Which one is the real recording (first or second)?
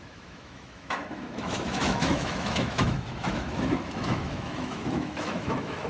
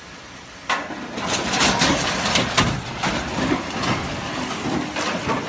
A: second